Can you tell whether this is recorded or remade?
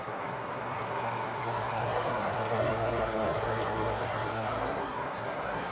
remade